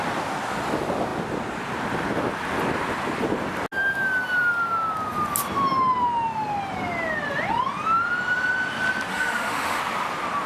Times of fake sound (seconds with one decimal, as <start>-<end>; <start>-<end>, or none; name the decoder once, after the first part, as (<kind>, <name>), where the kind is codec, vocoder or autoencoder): 9.1-9.8 (autoencoder, DAC-VAE)